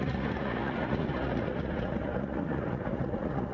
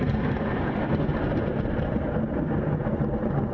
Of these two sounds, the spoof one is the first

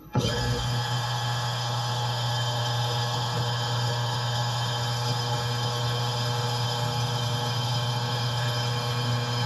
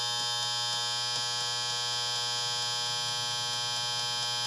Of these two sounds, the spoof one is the first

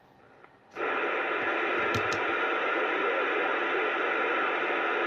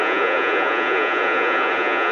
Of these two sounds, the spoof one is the second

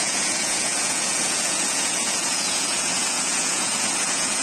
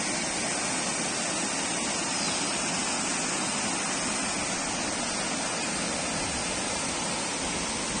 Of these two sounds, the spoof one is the first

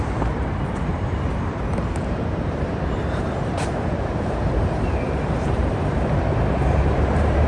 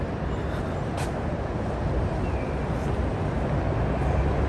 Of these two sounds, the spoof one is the first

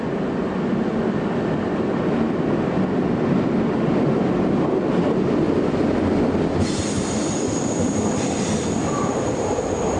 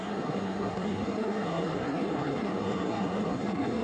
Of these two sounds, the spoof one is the second